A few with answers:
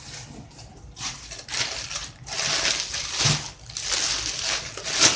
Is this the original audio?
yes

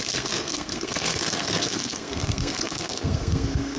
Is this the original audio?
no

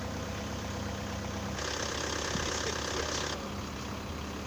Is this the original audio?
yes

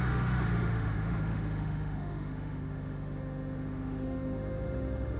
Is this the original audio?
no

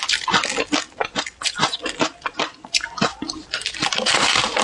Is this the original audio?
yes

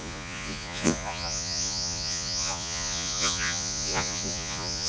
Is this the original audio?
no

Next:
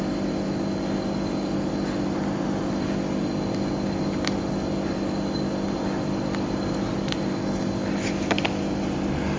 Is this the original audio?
yes